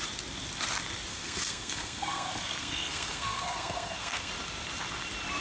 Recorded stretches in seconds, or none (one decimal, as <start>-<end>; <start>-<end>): 0.0-1.1; 4.3-5.4

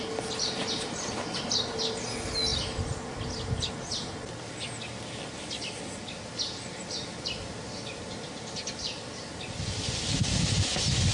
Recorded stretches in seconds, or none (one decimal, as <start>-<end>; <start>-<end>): 0.0-11.1